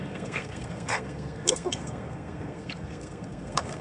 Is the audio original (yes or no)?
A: no